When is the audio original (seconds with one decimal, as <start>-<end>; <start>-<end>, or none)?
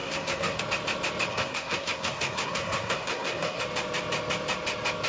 0.6-1.3; 3.6-5.1